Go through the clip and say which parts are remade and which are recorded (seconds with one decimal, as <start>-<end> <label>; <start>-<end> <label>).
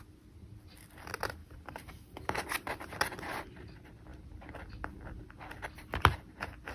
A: 0.0-1.4 recorded; 1.4-2.4 remade; 2.4-6.7 recorded